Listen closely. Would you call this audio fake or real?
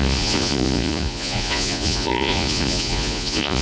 fake